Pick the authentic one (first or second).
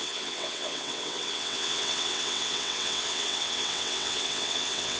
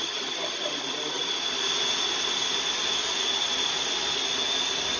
second